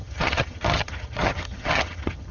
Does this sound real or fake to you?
fake